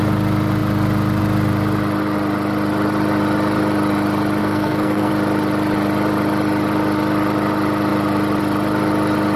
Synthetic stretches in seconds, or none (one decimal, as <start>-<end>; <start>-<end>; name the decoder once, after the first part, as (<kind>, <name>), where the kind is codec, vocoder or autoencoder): 4.4-5.1 (codec, SNAC)